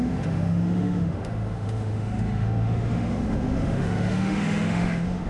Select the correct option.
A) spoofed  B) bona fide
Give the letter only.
A